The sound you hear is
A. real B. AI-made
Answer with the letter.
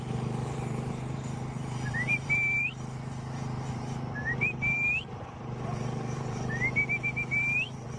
B